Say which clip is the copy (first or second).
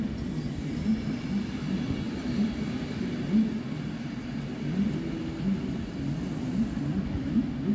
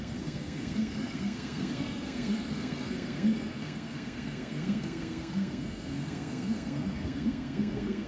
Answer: second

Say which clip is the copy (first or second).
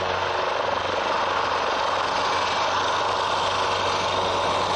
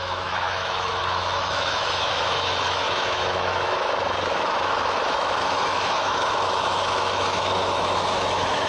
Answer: second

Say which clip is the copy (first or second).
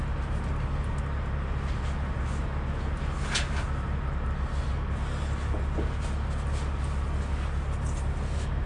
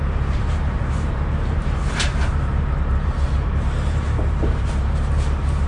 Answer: second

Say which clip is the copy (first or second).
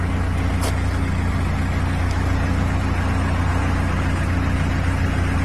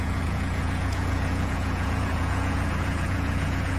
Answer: second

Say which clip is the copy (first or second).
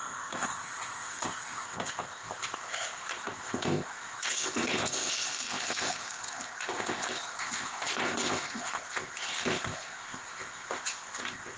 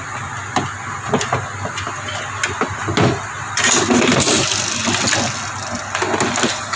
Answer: first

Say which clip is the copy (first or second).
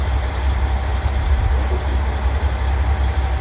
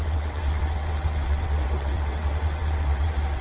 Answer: second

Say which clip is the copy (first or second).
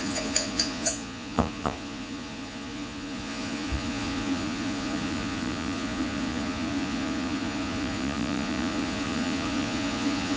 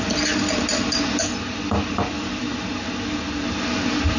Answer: first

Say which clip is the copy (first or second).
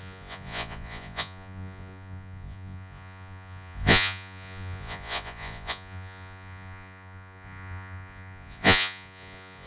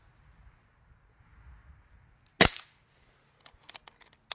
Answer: first